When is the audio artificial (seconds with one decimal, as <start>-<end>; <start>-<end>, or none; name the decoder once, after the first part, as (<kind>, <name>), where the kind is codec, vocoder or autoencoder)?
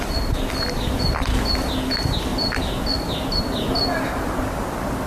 none